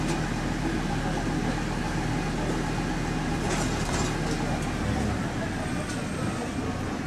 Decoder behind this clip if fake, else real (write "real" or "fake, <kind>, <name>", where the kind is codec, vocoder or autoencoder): real